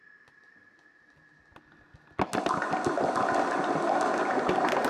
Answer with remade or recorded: recorded